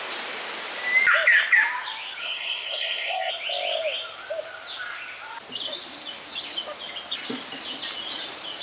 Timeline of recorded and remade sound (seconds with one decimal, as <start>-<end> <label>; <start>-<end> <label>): 0.0-2.2 recorded; 2.2-3.3 remade; 3.3-8.6 recorded